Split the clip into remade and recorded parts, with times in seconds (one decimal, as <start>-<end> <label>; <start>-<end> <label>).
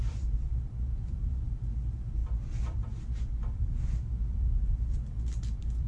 0.0-4.1 remade; 4.1-5.4 recorded; 5.4-5.9 remade